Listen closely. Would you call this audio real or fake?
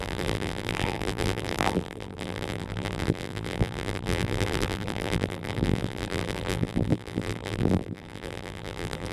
fake